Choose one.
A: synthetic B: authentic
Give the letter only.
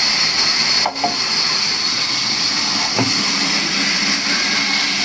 B